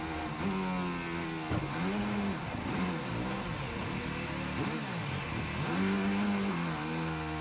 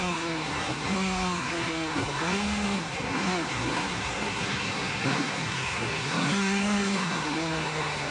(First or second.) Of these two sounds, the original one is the first